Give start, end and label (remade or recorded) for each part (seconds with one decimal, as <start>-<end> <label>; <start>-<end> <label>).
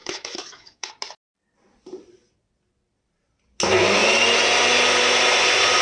0.0-0.9 remade; 0.9-5.8 recorded